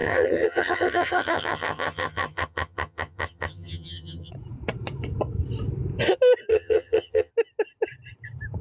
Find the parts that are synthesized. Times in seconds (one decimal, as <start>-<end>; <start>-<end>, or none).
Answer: 0.0-4.3; 6.5-7.3